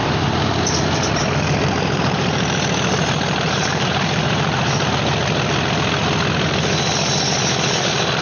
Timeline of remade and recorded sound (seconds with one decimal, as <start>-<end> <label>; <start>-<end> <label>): 0.0-4.9 remade; 4.9-8.2 recorded